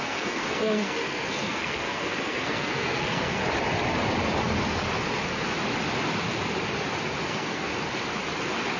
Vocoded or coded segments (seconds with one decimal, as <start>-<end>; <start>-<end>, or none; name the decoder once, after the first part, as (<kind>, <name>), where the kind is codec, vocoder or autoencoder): 0.0-3.4 (codec, SNAC); 7.2-7.7